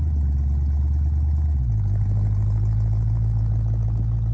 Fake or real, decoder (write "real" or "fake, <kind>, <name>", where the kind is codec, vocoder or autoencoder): real